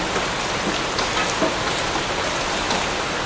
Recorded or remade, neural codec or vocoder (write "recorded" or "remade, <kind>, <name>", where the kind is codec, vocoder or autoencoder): recorded